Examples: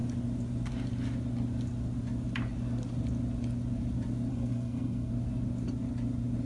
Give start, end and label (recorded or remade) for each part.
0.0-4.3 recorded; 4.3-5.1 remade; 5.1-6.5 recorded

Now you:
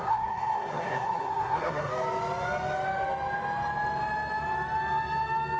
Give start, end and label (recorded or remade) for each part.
0.0-1.9 remade; 1.9-5.6 recorded

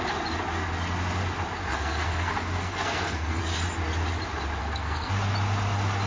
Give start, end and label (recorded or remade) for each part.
0.0-1.7 recorded; 1.7-3.4 remade; 3.4-4.6 recorded; 4.6-5.1 remade; 5.1-6.1 recorded